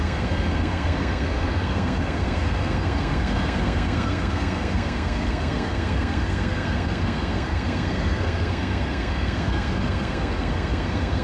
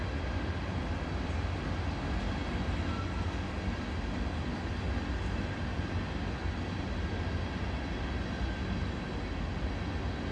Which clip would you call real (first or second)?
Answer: second